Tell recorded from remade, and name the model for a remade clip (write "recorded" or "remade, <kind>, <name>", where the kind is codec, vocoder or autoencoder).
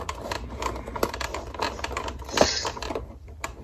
recorded